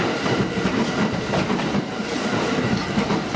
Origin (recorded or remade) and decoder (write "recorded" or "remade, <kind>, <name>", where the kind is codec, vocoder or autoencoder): remade, vocoder, BigVGAN v2